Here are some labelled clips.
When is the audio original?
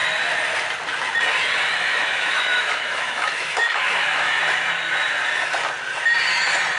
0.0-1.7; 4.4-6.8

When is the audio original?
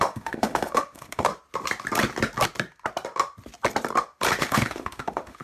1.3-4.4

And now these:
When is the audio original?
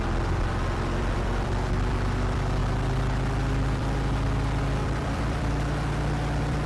none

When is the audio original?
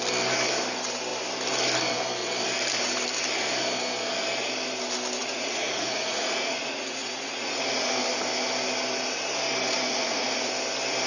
0.0-5.2; 7.9-9.9; 10.5-11.1